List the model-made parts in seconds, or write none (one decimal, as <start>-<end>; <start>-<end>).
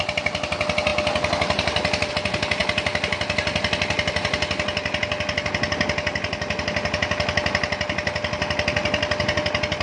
none